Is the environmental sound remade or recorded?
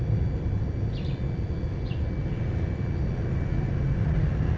recorded